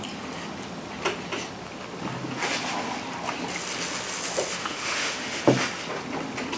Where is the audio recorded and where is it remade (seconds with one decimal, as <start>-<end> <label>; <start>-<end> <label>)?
0.0-4.6 recorded; 4.6-5.4 remade; 5.4-6.6 recorded